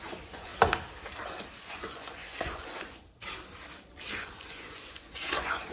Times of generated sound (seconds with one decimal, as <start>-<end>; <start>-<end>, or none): 0.0-0.5; 1.6-3.0; 4.1-5.7